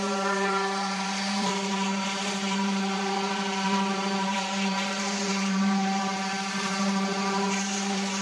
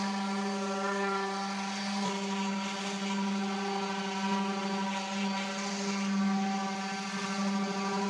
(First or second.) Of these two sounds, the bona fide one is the second